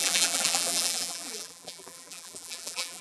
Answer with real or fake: fake